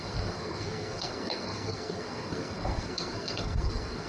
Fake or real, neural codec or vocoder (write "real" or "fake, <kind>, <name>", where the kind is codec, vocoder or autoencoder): fake, codec, SNAC